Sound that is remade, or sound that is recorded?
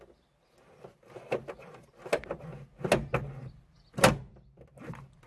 recorded